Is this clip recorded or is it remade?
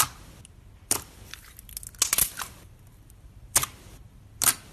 recorded